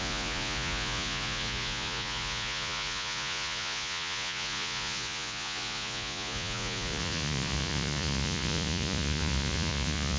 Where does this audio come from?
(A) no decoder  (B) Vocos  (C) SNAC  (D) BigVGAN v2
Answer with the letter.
B